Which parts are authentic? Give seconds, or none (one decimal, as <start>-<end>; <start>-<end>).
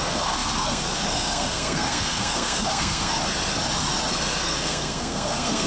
3.2-4.4